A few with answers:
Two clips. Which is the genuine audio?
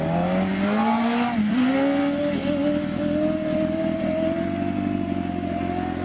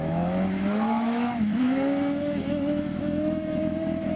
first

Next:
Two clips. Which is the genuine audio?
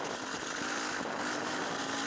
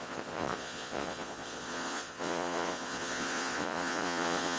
first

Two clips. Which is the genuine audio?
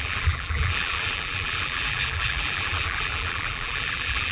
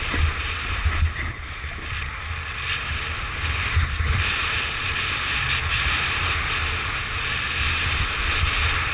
second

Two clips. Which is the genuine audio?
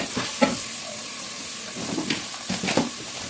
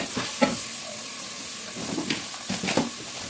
second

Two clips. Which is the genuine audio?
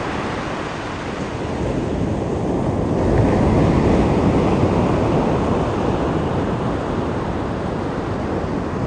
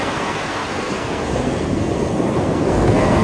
first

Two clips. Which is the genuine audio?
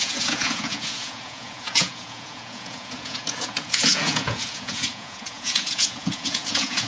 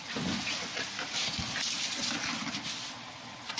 second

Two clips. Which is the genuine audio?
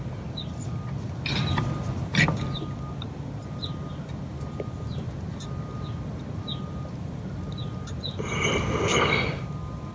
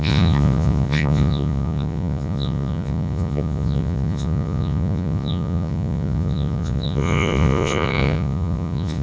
first